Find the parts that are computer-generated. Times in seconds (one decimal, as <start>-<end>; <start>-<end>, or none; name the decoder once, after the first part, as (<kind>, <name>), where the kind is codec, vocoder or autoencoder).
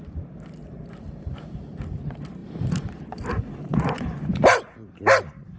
0.6-1.5 (vocoder, BigVGAN v2)